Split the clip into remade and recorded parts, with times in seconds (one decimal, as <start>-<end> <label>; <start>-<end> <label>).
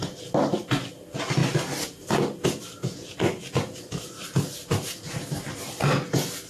0.0-6.5 recorded